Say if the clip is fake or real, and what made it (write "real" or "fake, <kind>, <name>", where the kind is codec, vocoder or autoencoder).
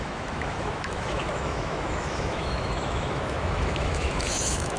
fake, autoencoder, DAC-VAE